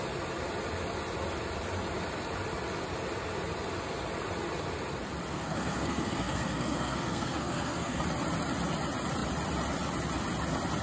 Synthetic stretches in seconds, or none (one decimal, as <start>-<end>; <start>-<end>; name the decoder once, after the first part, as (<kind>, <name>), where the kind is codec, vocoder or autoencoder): 5.3-8.0 (codec, SNAC)